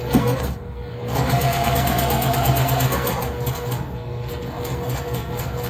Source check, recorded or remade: remade